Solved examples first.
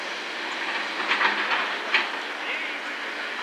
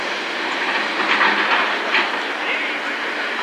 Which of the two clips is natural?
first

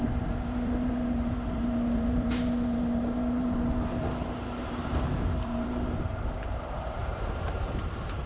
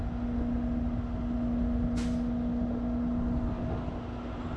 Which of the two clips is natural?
second